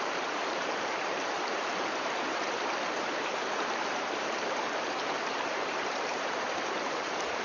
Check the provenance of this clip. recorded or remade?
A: remade